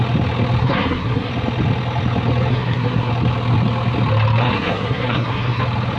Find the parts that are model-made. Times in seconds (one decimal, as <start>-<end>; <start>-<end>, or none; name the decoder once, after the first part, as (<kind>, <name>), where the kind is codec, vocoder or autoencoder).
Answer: 0.6-1.3 (codec, SNAC); 2.5-3.1; 4.4-5.6